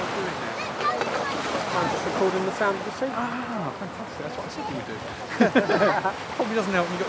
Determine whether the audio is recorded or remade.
recorded